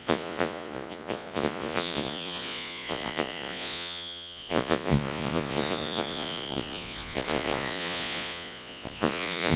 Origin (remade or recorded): remade